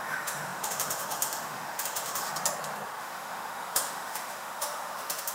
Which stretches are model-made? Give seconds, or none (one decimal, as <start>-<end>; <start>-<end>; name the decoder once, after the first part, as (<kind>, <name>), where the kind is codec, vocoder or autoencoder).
0.0-2.3 (autoencoder, DAC-VAE); 3.0-5.3